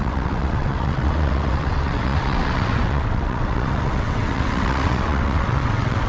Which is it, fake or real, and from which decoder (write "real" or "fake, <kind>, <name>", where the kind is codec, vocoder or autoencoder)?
fake, vocoder, WaveNeXt